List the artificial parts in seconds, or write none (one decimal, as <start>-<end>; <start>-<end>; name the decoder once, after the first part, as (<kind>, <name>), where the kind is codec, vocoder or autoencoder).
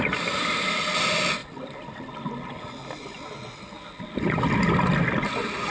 none